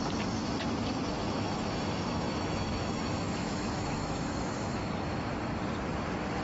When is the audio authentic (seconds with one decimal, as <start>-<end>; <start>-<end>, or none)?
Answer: 0.0-1.1; 4.9-6.4